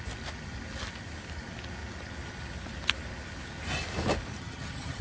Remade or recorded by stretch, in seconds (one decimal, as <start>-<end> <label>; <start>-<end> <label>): 0.0-4.4 recorded; 4.4-5.0 remade